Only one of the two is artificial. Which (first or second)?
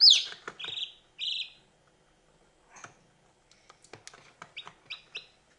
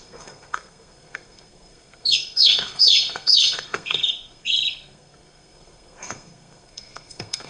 second